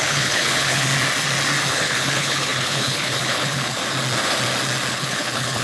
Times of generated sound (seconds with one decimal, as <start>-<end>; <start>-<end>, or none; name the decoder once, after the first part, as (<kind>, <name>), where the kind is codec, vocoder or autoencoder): 0.0-0.9 (codec, HILCodec); 1.7-3.8; 4.9-5.6

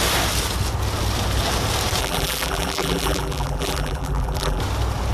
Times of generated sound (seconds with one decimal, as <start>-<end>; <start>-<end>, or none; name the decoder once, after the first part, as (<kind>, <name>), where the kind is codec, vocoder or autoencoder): 2.0-4.6 (vocoder, BigVGAN v2)

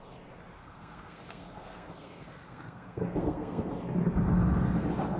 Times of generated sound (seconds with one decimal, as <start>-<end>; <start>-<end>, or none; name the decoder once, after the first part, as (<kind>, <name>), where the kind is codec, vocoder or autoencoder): 0.6-3.7 (codec, SNAC)

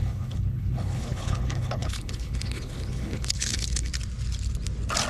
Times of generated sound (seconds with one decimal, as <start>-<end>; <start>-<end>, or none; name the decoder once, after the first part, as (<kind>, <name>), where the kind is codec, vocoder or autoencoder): 0.0-3.9 (codec, HILCodec)